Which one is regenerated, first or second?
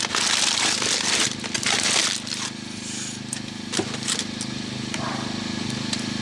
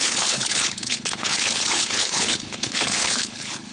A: second